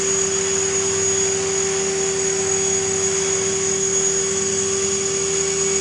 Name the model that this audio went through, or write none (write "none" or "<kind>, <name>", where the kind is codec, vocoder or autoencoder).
none